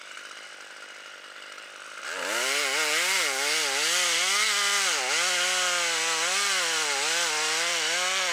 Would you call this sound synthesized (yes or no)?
yes